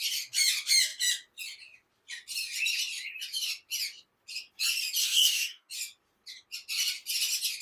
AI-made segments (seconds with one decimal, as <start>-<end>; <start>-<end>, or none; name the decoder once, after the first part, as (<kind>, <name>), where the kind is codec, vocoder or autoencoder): 5.0-5.7 (codec, DAC)